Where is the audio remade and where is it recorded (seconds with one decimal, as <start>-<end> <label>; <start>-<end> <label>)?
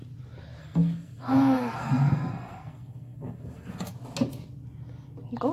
0.0-0.6 recorded; 0.6-3.9 remade; 3.9-5.5 recorded